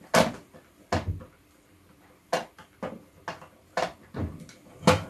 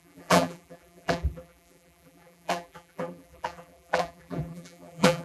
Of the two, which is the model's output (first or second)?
second